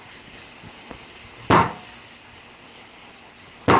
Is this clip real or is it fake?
real